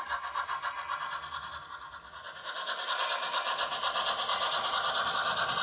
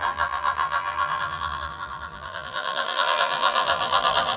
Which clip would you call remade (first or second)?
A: second